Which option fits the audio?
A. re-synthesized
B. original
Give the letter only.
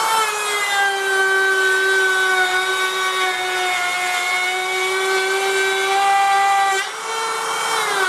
B